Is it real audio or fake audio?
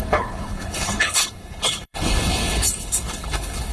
fake